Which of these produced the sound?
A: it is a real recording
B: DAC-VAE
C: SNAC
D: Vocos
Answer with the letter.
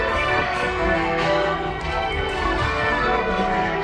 C